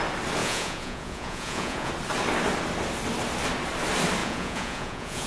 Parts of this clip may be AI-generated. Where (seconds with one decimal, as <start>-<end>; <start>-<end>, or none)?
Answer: 0.4-1.9; 4.2-5.3